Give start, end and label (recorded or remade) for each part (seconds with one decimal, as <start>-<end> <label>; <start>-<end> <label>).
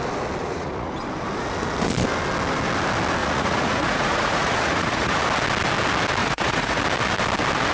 0.0-0.4 recorded; 0.4-0.9 remade; 0.9-3.2 recorded; 3.2-5.2 remade; 5.2-6.2 recorded; 6.2-6.8 remade; 6.8-7.7 recorded